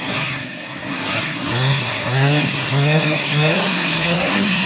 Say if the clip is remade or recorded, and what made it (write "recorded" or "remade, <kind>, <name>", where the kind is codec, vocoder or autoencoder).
remade, codec, SNAC